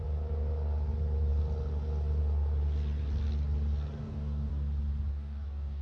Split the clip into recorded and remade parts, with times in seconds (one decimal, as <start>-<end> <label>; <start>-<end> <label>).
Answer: 0.0-4.0 recorded; 4.0-4.5 remade; 4.5-5.1 recorded; 5.1-5.8 remade